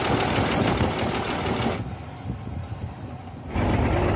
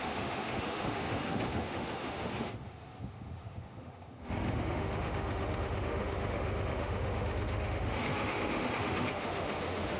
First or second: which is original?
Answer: first